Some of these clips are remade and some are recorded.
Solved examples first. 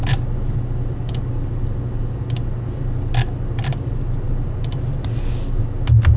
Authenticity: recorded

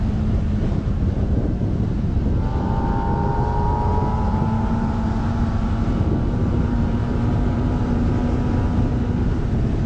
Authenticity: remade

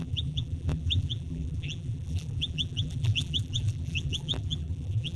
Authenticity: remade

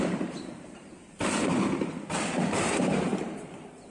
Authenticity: remade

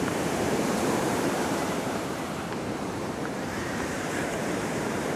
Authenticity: remade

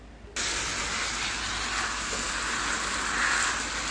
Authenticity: recorded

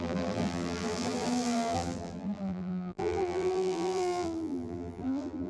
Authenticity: remade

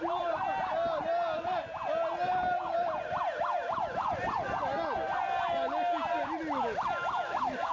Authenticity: recorded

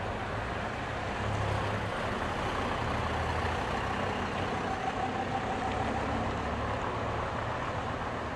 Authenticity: recorded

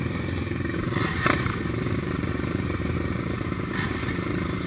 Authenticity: remade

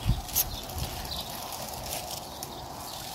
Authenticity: recorded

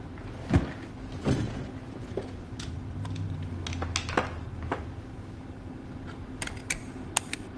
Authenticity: recorded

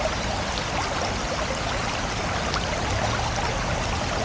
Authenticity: recorded